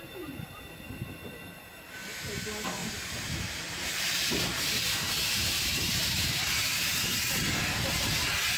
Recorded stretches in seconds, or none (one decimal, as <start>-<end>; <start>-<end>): 0.0-2.8; 7.3-8.6